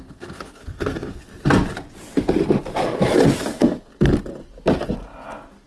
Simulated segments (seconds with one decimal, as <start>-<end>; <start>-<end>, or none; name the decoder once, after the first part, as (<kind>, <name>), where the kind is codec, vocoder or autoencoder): 0.0-1.3 (codec, SNAC); 3.4-3.9